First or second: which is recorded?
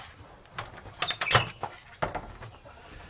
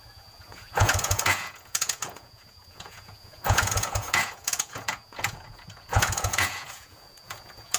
first